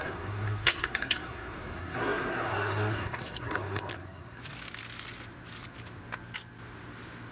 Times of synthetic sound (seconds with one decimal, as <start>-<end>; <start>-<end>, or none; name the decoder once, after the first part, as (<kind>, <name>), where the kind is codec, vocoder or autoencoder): 0.0-4.4 (codec, SNAC)